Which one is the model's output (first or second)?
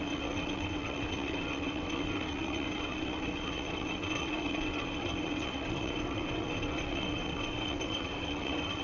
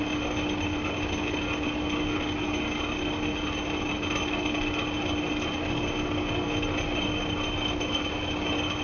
first